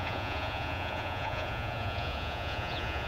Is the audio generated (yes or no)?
yes